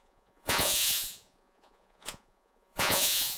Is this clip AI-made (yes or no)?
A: yes